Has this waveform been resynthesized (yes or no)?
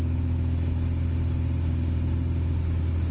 no